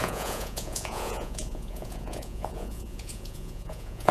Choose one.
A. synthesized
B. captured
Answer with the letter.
A